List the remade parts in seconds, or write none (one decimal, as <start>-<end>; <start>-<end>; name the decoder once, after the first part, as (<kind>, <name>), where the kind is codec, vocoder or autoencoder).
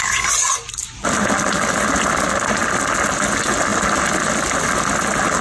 none